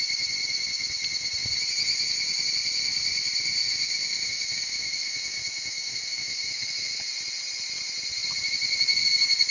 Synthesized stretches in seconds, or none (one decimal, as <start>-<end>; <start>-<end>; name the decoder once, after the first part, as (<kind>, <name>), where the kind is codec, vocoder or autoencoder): 3.6-7.0 (autoencoder, DAC-VAE)

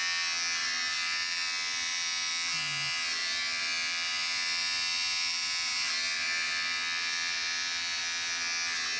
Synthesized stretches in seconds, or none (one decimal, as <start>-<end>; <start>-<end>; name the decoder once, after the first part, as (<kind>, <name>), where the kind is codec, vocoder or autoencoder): 0.6-2.3 (vocoder, BigVGAN v2); 3.2-8.0

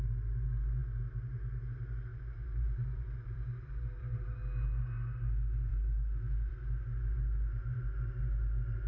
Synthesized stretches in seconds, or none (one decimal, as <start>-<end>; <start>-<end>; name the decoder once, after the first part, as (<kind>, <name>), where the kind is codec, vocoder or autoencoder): 2.1-4.1 (vocoder, BigVGAN v2)

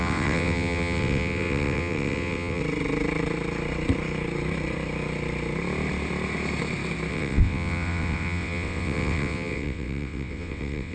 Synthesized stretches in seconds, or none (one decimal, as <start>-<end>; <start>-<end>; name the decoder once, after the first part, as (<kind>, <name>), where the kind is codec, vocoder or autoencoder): 0.0-2.6 (vocoder, WaveNeXt); 7.1-10.9

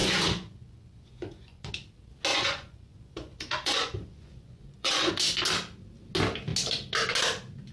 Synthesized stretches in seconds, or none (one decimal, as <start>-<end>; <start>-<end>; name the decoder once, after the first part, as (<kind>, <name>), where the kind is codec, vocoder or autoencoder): 0.0-1.7 (vocoder, Vocos); 2.3-5.1

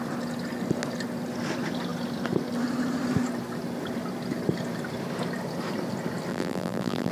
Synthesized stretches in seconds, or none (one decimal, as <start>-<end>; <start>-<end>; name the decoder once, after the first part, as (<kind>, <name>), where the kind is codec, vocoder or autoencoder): 6.3-7.1 (vocoder, BigVGAN v2)